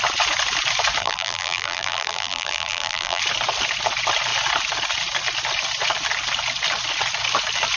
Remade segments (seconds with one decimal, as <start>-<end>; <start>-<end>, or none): 1.0-3.2